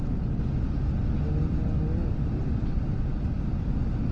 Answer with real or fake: real